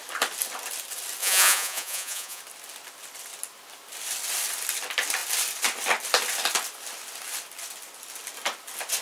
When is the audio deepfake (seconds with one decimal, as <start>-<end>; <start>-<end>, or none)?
1.2-2.4